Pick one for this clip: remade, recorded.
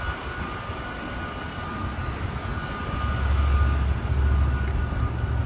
recorded